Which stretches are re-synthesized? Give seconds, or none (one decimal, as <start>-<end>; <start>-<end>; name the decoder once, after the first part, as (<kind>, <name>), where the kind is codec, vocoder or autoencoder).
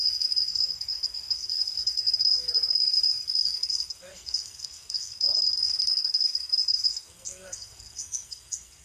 0.0-8.8 (codec, SNAC)